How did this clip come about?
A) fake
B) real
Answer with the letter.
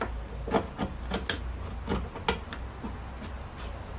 B